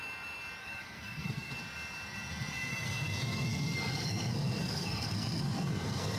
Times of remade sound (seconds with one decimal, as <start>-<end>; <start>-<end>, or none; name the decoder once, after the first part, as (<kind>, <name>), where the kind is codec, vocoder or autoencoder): 0.6-1.5 (codec, SNAC); 2.7-6.2